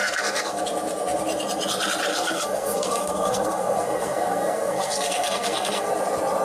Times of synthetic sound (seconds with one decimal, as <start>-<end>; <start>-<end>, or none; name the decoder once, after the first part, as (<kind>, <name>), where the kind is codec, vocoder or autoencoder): 0.0-0.6 (codec, SNAC); 2.1-5.9